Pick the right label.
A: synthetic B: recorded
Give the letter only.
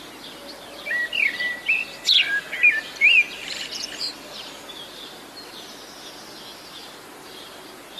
B